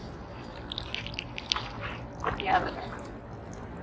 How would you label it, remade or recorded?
recorded